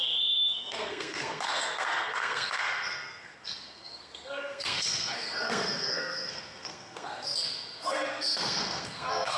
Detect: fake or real fake